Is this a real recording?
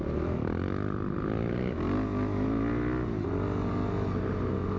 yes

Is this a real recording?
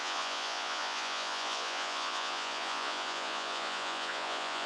no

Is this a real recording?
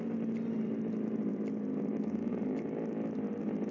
yes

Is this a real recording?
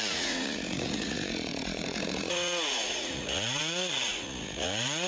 no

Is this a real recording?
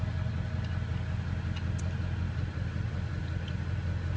yes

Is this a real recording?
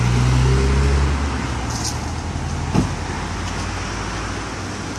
yes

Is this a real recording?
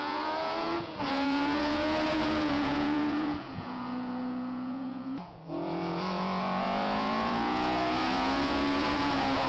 no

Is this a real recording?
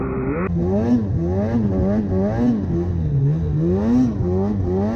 yes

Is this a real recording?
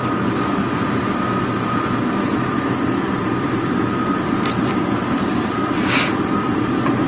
yes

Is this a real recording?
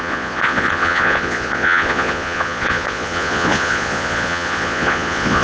no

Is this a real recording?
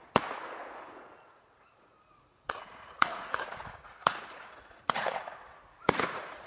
no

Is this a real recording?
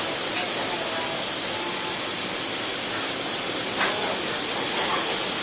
yes